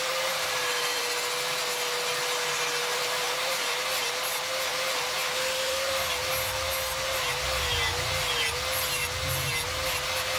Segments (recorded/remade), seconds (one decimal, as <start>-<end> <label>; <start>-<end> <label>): 0.0-1.2 remade; 1.2-2.9 recorded; 2.9-6.7 remade; 6.7-10.4 recorded